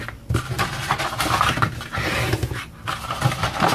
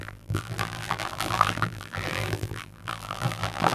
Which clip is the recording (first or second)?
first